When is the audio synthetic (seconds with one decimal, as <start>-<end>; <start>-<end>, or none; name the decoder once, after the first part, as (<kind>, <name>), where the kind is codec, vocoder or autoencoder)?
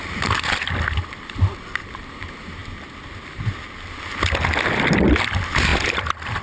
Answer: 0.0-0.6 (vocoder, BigVGAN v2); 2.6-3.8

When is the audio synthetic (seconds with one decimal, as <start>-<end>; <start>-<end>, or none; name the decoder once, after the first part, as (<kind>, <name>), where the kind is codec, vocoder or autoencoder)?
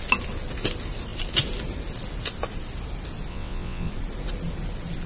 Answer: 3.3-3.9 (vocoder, WaveNeXt)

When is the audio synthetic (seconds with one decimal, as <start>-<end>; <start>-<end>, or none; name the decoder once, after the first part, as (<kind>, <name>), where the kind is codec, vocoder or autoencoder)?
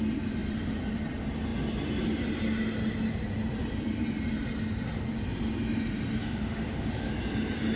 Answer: 6.2-7.1 (autoencoder, DAC-VAE)